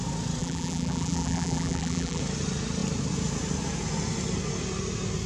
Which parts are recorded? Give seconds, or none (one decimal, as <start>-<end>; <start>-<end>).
0.0-0.4; 2.2-5.3